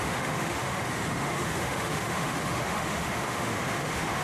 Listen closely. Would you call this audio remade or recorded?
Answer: remade